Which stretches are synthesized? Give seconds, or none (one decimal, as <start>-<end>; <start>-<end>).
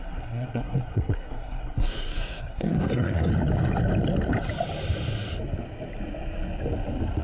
0.0-3.3